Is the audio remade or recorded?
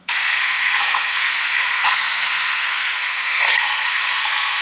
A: remade